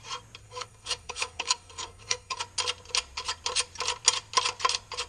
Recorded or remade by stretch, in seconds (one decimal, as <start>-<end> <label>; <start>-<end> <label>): 0.0-0.4 recorded; 0.4-2.4 remade; 2.4-5.1 recorded